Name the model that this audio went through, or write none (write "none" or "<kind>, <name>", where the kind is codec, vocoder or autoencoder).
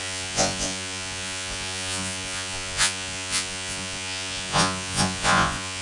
vocoder, Vocos